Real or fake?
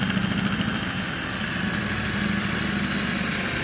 real